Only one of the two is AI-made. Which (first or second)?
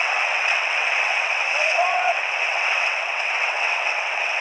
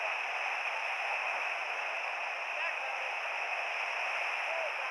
first